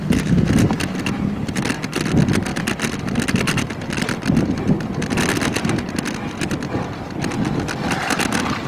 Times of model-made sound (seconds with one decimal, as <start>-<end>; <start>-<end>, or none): none